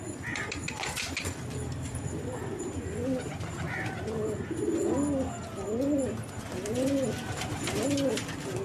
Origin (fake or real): real